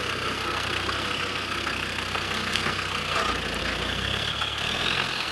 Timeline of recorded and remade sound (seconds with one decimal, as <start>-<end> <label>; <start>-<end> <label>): 0.0-3.2 remade; 3.2-3.6 recorded; 3.6-5.3 remade